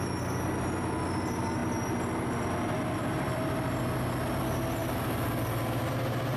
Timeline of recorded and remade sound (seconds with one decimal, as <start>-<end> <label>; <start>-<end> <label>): 0.0-3.0 recorded; 3.0-3.5 remade; 3.5-6.4 recorded